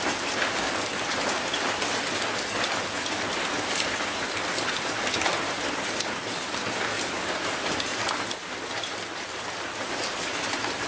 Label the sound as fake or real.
real